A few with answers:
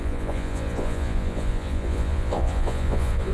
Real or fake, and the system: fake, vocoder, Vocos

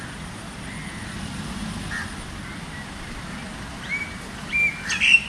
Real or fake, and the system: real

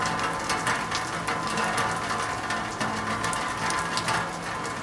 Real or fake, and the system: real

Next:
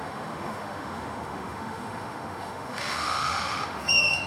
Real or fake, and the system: fake, autoencoder, DAC-VAE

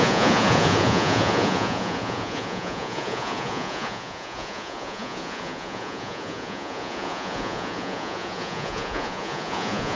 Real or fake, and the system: fake, vocoder, Vocos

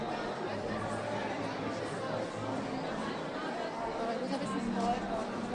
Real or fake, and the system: real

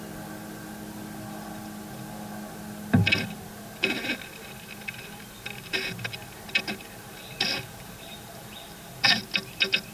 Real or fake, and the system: real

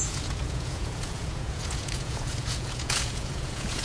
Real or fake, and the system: fake, vocoder, Vocos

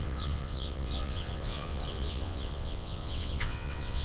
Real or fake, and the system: fake, vocoder, WaveNeXt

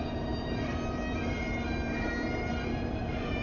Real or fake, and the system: fake, vocoder, BigVGAN v2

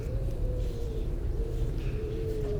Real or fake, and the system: fake, vocoder, BigVGAN v2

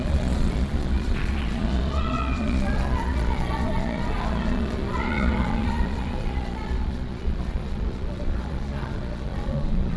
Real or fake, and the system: fake, vocoder, Vocos